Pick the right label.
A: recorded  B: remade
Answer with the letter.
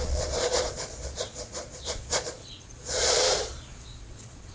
B